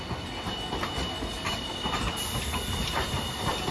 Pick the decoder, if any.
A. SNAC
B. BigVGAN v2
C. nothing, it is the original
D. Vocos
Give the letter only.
C